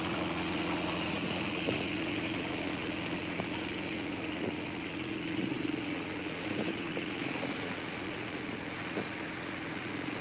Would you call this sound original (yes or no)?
no